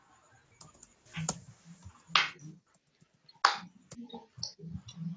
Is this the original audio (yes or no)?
yes